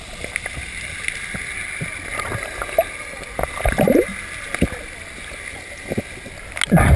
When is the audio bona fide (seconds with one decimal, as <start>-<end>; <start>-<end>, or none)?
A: 0.0-7.0